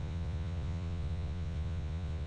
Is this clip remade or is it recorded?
remade